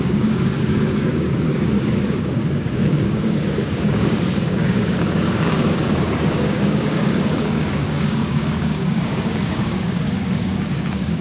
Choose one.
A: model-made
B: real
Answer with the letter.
A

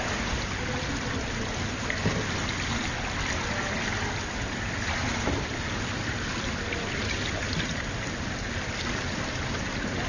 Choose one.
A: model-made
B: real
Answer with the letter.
B